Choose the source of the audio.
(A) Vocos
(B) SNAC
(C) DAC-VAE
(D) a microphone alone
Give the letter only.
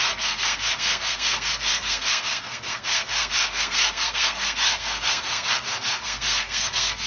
B